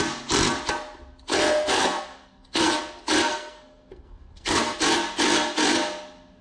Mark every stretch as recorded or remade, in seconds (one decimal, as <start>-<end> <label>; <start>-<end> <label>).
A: 0.0-1.3 recorded; 1.3-2.7 remade; 2.7-3.3 recorded; 3.3-4.8 remade; 4.8-6.4 recorded